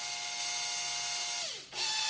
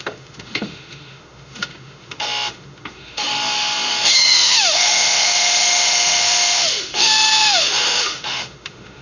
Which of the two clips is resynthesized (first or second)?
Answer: second